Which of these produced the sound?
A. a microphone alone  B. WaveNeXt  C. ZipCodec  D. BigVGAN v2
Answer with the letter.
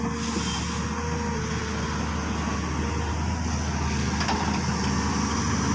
A